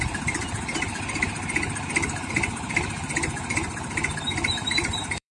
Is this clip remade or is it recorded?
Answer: remade